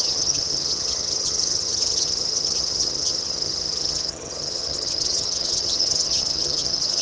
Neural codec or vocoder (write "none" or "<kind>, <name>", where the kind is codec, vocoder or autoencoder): vocoder, HiFi-GAN